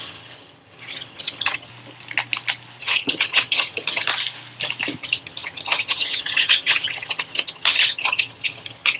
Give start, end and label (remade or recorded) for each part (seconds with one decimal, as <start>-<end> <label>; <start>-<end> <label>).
0.0-1.7 remade; 1.7-2.8 recorded; 2.8-4.1 remade; 4.1-5.0 recorded; 5.0-9.0 remade